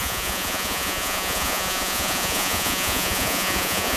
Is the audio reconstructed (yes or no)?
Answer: yes